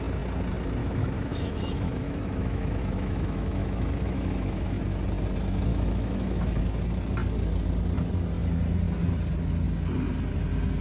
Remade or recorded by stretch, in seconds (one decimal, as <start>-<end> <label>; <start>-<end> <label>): 0.0-0.8 recorded; 0.8-4.8 remade; 4.8-5.7 recorded; 5.7-6.6 remade; 6.6-10.8 recorded